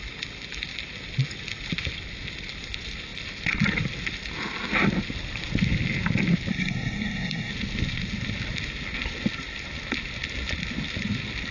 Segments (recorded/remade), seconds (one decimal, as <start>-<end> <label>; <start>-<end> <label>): 0.0-6.5 recorded; 6.5-7.5 remade; 7.5-11.5 recorded